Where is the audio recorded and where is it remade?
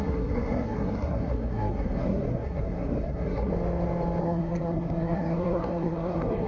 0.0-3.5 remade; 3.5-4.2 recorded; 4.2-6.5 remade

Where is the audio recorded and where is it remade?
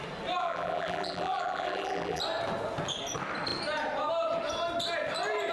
0.0-0.4 recorded; 0.4-2.2 remade; 2.2-5.5 recorded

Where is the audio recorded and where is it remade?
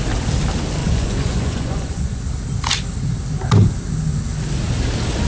0.0-0.8 recorded; 0.8-2.2 remade; 2.2-5.3 recorded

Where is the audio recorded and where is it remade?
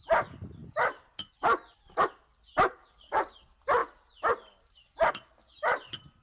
0.0-2.8 recorded; 2.8-3.3 remade; 3.3-6.2 recorded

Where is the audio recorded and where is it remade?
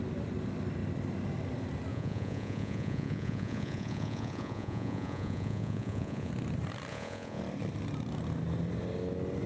0.0-1.9 recorded; 1.9-6.3 remade; 6.3-6.9 recorded; 6.9-7.4 remade; 7.4-9.5 recorded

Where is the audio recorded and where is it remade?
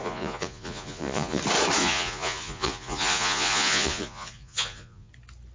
0.0-1.4 remade; 1.4-1.8 recorded; 1.8-5.1 remade; 5.1-5.5 recorded